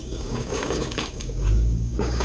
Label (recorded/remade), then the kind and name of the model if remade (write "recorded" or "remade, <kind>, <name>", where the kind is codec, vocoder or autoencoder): remade, codec, DAC